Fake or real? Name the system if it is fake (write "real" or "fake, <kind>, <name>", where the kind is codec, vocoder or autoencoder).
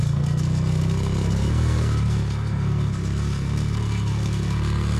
fake, codec, SNAC